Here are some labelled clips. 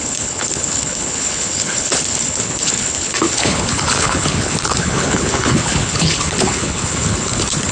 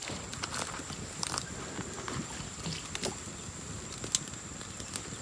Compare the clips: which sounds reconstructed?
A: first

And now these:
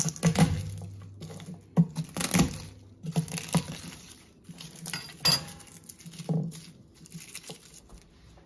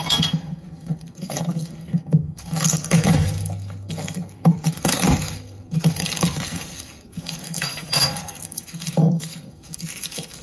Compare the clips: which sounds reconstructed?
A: second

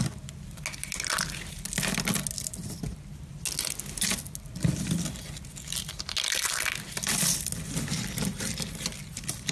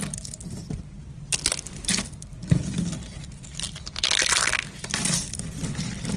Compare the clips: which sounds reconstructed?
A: second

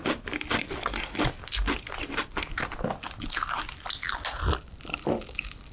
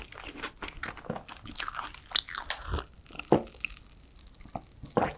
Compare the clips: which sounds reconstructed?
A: first